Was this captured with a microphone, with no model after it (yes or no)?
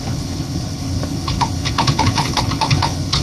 no